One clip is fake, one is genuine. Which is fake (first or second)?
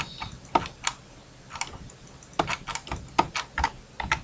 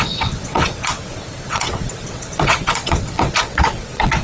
second